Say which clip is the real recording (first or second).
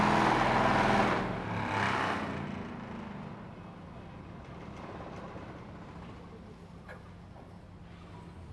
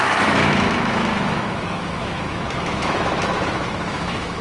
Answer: first